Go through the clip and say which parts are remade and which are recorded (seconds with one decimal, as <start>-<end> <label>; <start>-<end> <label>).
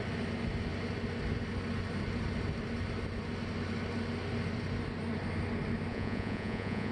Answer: 0.0-5.9 recorded; 5.9-6.9 remade